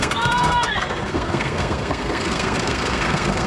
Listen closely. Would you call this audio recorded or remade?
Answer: remade